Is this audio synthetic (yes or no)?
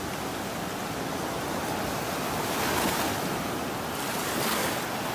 no